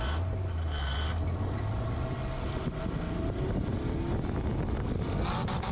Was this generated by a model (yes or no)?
no